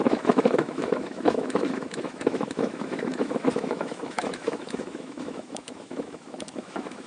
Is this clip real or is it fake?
fake